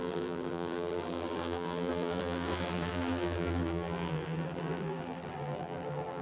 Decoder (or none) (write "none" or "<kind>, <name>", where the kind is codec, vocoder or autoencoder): vocoder, BigVGAN v2